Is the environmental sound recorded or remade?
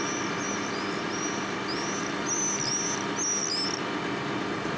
recorded